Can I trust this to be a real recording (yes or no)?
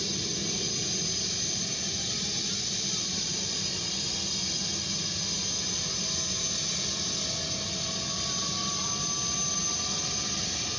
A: yes